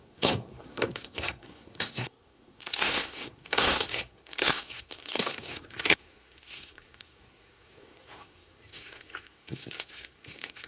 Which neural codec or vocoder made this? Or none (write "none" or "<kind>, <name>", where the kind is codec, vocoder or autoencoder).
codec, SNAC